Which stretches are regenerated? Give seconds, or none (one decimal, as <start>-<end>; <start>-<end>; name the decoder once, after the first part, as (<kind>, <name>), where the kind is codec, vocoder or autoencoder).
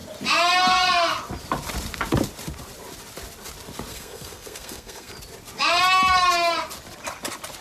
3.9-5.1 (codec, SNAC)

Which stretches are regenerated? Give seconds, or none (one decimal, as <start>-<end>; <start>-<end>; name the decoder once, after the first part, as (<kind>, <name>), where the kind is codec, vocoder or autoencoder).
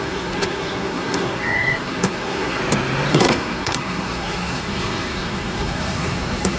0.0-2.6 (codec, SNAC); 3.1-6.6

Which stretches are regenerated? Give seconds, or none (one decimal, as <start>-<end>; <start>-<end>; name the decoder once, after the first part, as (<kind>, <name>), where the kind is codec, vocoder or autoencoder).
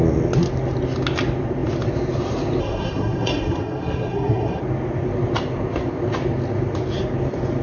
2.6-4.6 (codec, SNAC)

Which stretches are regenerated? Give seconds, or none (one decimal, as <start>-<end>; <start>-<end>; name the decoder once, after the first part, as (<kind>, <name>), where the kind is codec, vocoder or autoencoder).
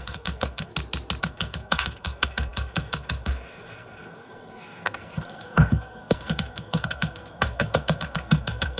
0.0-0.7 (codec, SNAC); 1.2-8.8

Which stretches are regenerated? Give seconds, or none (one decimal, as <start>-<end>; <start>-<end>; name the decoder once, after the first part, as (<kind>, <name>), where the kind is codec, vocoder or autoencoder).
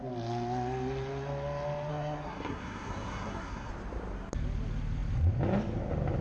1.9-3.7 (codec, SNAC)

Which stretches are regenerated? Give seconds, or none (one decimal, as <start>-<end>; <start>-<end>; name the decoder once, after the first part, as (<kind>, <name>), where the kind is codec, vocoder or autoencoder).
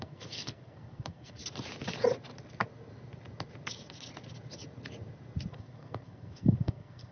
0.0-1.4 (codec, SNAC); 5.5-7.1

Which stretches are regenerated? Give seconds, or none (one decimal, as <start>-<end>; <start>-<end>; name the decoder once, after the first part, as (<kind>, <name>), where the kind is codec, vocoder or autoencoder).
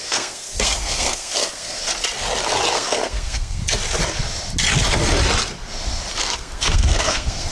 0.0-1.8 (codec, SNAC); 2.7-3.6; 6.1-7.5